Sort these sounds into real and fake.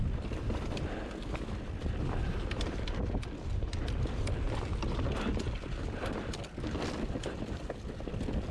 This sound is real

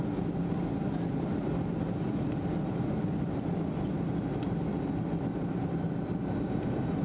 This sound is real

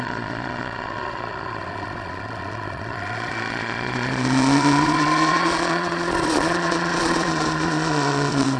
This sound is fake